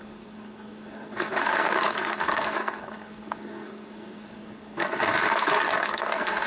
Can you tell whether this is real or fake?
fake